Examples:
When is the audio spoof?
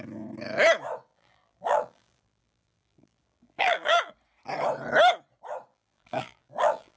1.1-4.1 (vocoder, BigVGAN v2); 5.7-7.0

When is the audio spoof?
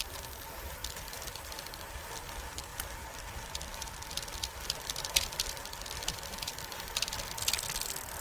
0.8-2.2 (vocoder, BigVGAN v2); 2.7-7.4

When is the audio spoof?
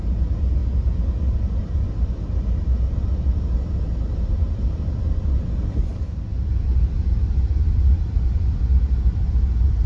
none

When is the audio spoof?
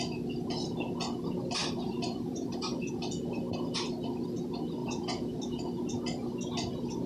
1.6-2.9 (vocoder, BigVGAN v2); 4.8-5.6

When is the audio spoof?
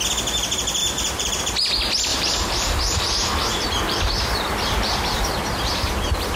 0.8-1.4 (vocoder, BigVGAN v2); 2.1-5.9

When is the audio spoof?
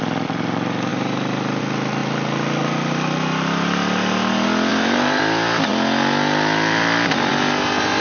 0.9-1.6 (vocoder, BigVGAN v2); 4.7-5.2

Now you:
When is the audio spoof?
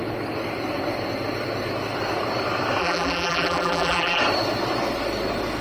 2.8-4.2 (vocoder, BigVGAN v2)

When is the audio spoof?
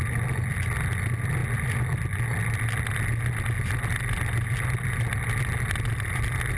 none